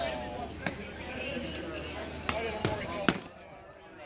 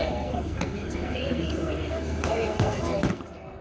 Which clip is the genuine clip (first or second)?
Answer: first